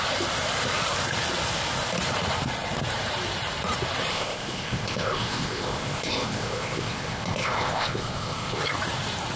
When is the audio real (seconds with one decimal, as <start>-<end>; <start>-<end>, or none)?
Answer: 0.0-4.1; 8.6-9.4